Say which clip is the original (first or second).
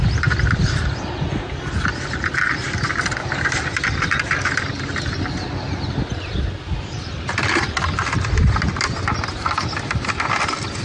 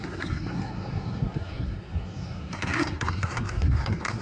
first